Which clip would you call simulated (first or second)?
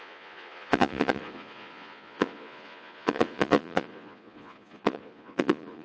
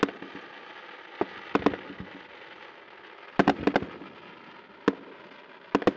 first